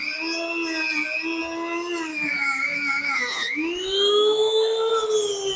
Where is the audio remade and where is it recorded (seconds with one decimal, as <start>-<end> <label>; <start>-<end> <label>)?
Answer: 0.0-2.1 recorded; 2.1-4.9 remade; 4.9-5.6 recorded

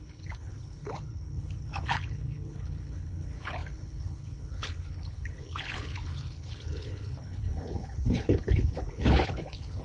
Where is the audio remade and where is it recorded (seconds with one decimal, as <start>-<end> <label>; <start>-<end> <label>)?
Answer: 0.0-9.8 remade